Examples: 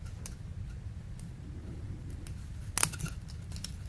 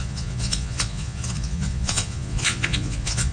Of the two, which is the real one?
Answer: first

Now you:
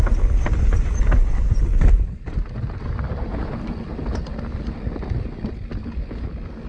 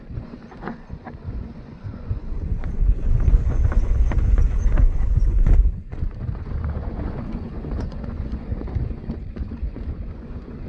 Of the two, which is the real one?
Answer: first